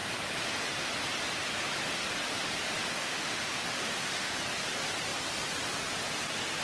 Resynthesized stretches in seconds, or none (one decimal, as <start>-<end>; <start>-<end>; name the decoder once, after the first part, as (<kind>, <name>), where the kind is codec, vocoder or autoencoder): 3.0-4.3 (autoencoder, DAC-VAE)